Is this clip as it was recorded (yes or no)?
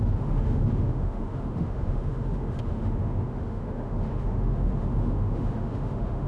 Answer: no